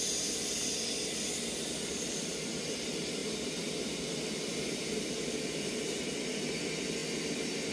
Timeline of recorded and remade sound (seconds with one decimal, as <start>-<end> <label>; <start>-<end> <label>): 0.0-3.2 recorded; 3.2-6.6 remade; 6.6-7.0 recorded; 7.0-7.7 remade